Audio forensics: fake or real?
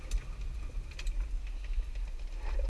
real